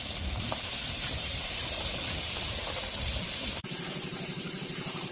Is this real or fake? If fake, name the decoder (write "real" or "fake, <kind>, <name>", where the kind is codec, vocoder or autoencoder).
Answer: fake, vocoder, BigVGAN v2